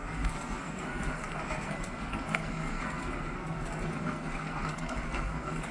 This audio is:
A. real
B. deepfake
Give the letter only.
B